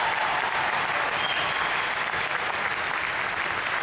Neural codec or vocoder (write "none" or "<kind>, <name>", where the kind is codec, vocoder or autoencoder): none